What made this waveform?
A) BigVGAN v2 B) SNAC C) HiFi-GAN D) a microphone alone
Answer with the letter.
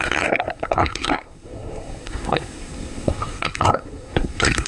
B